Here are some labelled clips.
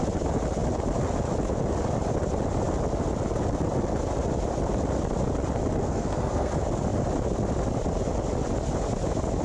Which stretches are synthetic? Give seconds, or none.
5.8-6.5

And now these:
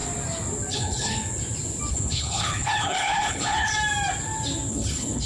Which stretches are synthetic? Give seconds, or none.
0.7-1.1; 1.9-3.7; 4.7-5.3

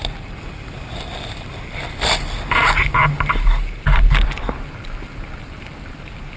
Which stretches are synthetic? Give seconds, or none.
0.0-1.5